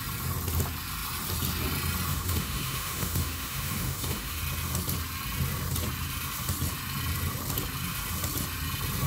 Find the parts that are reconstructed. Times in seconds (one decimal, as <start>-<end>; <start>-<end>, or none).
2.1-4.4